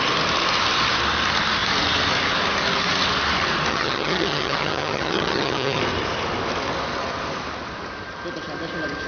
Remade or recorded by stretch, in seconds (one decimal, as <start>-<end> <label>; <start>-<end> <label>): 0.0-3.7 recorded; 3.7-5.8 remade; 5.8-9.1 recorded